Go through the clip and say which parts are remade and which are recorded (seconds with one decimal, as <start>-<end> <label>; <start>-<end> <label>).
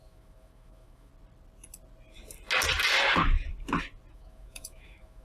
0.0-1.1 remade; 1.1-4.1 recorded; 4.1-5.2 remade